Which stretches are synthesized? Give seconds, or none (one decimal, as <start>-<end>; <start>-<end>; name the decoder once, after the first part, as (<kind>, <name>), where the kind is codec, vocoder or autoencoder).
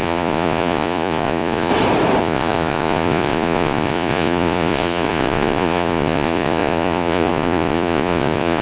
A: 0.0-1.7 (vocoder, Vocos); 2.2-8.6